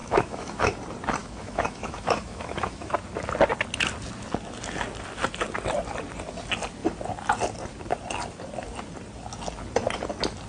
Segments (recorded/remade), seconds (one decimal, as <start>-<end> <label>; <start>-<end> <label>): 0.0-0.7 remade; 0.7-1.2 recorded; 1.2-2.9 remade; 2.9-10.5 recorded